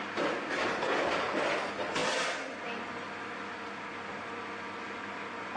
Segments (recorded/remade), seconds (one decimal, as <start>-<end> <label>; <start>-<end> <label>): 0.0-5.6 recorded